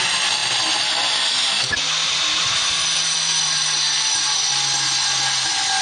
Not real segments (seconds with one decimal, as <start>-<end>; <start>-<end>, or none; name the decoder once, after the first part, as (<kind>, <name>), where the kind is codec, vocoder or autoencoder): none